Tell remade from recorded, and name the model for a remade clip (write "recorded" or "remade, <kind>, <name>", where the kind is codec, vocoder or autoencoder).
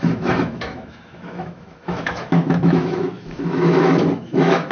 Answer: remade, autoencoder, DAC-VAE